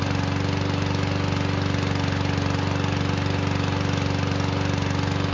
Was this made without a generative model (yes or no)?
yes